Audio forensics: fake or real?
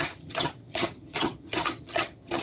fake